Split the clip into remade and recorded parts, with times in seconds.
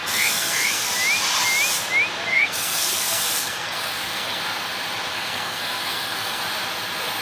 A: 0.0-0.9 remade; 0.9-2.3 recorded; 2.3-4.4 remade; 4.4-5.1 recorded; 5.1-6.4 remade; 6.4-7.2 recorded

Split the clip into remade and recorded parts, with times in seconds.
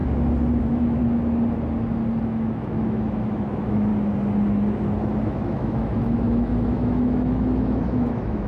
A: 0.0-0.6 recorded; 0.6-1.0 remade; 1.0-2.2 recorded; 2.2-3.9 remade; 3.9-5.2 recorded; 5.2-8.5 remade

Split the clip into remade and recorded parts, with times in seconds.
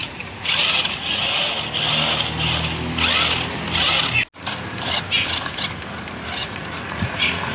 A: 0.0-1.2 remade; 1.2-6.4 recorded; 6.4-7.5 remade